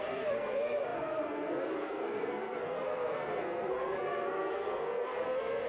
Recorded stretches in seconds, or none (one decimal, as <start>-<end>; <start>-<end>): none